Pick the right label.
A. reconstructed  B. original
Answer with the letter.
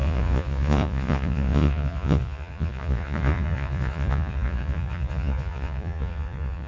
A